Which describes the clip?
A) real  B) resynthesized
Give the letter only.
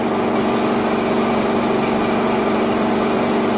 A